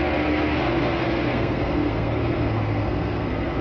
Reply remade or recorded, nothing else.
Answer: remade